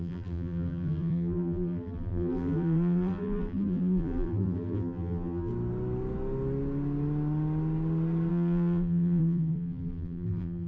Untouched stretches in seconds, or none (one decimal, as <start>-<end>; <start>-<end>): 5.5-8.3